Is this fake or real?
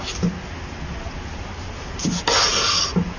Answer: real